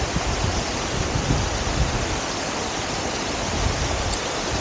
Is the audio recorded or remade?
recorded